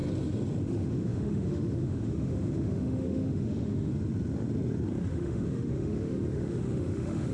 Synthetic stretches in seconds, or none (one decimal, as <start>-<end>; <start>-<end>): 0.6-3.9; 5.1-7.3